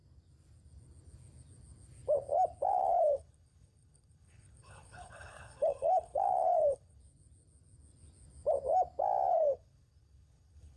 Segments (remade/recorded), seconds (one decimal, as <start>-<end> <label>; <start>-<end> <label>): 0.0-2.7 recorded; 2.7-7.0 remade; 7.0-9.3 recorded; 9.3-10.8 remade

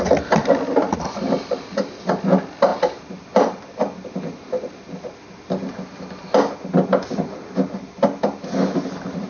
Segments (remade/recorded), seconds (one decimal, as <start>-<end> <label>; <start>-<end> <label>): 0.0-9.3 recorded

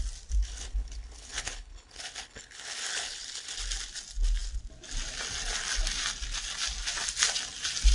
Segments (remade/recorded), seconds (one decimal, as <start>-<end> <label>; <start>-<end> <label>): 0.0-0.4 recorded; 0.4-3.6 remade; 3.6-7.9 recorded

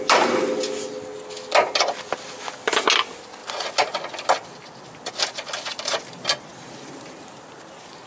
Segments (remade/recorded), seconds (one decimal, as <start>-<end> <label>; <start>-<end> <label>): 0.0-8.1 recorded

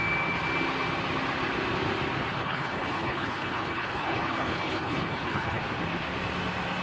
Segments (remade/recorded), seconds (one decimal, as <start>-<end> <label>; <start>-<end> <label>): 0.0-2.3 recorded; 2.3-5.6 remade; 5.6-6.8 recorded